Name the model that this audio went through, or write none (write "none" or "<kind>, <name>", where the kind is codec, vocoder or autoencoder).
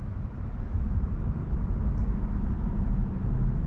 autoencoder, DAC-VAE